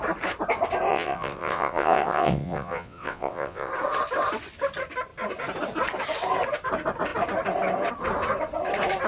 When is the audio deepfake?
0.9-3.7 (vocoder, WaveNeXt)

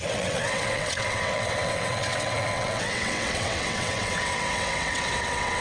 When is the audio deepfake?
0.0-5.6 (vocoder, WaveNeXt)

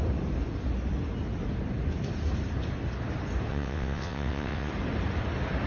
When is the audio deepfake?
3.5-4.7 (vocoder, WaveNeXt)

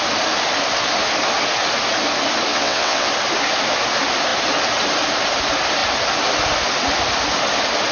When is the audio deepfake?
2.5-3.1 (vocoder, WaveNeXt)

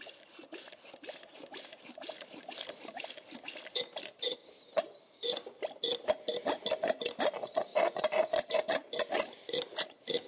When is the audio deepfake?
none